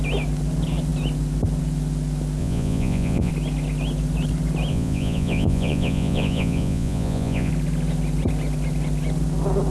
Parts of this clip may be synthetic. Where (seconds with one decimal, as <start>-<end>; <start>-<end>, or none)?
2.4-3.3; 4.7-7.5